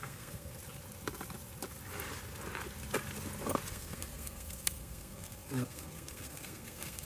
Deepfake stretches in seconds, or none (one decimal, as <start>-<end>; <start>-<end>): 0.0-0.6; 3.7-7.0